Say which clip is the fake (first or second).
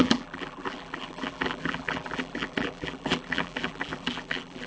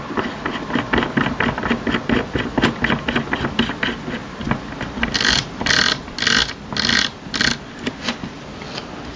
first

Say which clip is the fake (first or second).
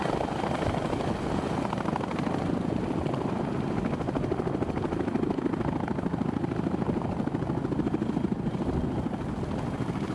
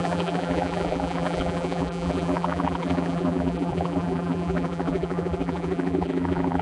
second